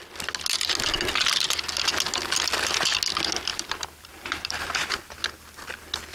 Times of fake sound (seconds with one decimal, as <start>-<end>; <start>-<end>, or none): 3.5-4.6